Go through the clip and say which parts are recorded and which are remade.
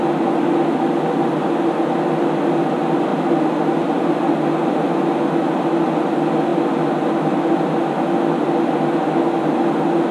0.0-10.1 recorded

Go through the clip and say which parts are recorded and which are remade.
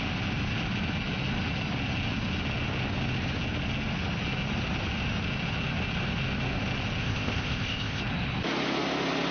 0.0-7.0 recorded; 7.0-8.0 remade; 8.0-9.3 recorded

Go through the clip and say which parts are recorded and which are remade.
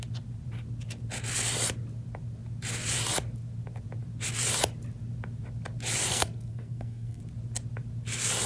0.0-6.1 recorded; 6.1-7.2 remade; 7.2-8.5 recorded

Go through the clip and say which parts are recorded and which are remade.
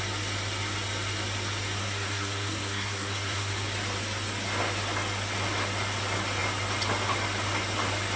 0.0-1.8 recorded; 1.8-3.6 remade; 3.6-8.2 recorded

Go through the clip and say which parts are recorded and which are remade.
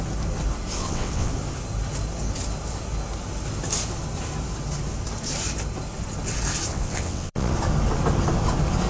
0.0-0.8 recorded; 0.8-1.3 remade; 1.3-6.7 recorded; 6.7-7.5 remade; 7.5-8.9 recorded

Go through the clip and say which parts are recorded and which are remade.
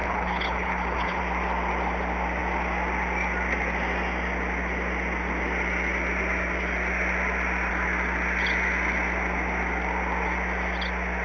0.0-1.2 remade; 1.2-11.2 recorded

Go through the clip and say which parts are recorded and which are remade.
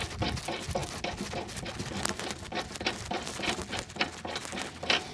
0.0-5.1 recorded